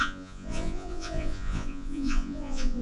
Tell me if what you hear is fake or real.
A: fake